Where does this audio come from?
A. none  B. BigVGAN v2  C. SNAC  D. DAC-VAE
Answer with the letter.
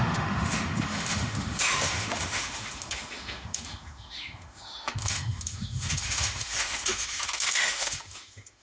D